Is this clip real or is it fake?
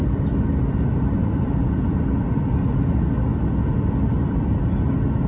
real